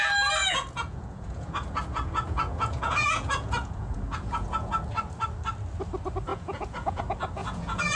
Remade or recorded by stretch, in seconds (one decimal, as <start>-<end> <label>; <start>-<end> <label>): 0.0-0.4 recorded; 0.4-4.7 remade; 4.7-6.3 recorded; 6.3-7.0 remade; 7.0-7.4 recorded; 7.4-8.0 remade